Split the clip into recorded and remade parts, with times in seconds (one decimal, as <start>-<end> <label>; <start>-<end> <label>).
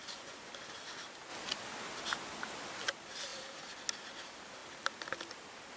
0.0-0.5 remade; 0.5-5.8 recorded